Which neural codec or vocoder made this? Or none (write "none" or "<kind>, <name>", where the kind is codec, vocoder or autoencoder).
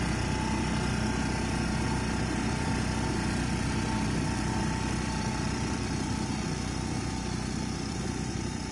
vocoder, BigVGAN v2